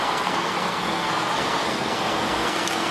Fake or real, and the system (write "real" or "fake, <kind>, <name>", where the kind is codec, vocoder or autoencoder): fake, codec, SNAC